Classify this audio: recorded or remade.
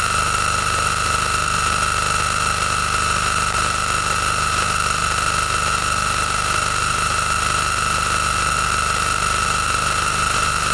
recorded